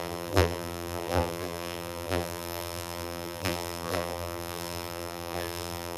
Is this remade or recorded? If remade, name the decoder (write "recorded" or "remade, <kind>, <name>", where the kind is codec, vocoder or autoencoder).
remade, vocoder, BigVGAN v2